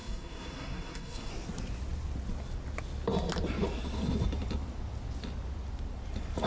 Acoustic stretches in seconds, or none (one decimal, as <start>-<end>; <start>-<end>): 1.3-6.5